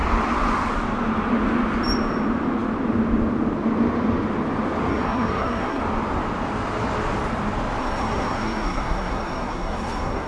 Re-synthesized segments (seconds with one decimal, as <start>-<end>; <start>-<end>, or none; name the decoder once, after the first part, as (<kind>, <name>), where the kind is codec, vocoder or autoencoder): 4.9-5.8 (codec, SNAC); 7.8-10.3